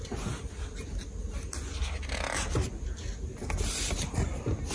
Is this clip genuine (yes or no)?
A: yes